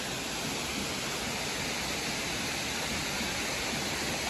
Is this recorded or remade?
recorded